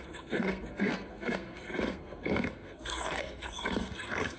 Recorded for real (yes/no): no